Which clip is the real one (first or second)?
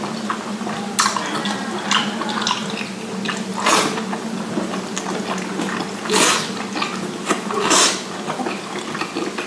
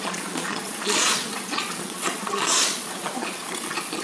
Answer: first